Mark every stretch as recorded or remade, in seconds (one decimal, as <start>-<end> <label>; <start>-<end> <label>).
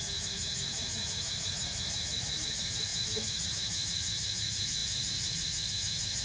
0.0-6.2 remade